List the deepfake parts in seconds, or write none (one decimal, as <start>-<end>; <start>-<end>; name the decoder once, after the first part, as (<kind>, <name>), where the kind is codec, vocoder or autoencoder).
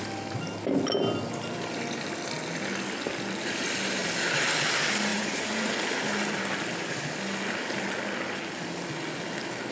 5.1-5.7 (vocoder, Vocos)